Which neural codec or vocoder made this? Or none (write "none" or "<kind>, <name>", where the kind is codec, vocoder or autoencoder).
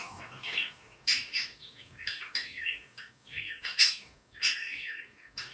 codec, DAC